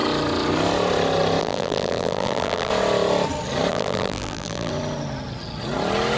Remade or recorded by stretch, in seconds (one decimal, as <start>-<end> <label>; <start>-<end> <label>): 0.0-1.4 recorded; 1.4-2.7 remade; 2.7-3.7 recorded; 3.7-4.7 remade; 4.7-6.2 recorded